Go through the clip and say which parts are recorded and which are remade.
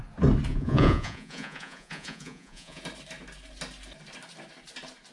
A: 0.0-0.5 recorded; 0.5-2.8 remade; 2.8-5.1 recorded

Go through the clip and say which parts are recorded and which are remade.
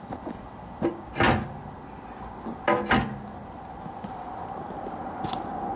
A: 0.0-5.8 recorded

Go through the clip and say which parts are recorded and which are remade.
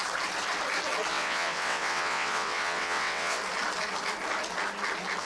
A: 0.0-1.1 recorded; 1.1-3.4 remade; 3.4-5.2 recorded